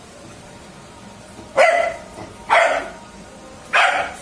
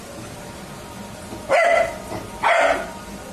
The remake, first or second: first